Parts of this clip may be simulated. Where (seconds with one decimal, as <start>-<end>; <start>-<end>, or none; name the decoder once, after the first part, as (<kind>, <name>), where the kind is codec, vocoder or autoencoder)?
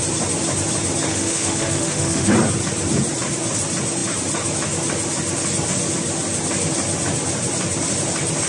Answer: 1.1-2.3 (autoencoder, DAC-VAE)